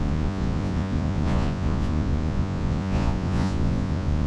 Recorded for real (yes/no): no